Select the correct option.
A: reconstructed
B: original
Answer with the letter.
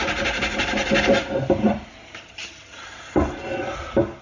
B